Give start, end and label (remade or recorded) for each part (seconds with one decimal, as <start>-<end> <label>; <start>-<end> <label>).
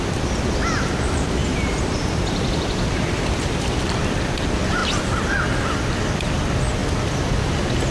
0.0-1.4 recorded; 1.4-3.8 remade; 3.8-7.9 recorded